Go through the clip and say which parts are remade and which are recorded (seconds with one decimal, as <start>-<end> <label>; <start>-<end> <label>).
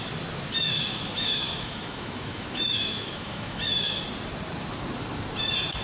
0.0-0.7 recorded; 0.7-4.0 remade; 4.0-5.8 recorded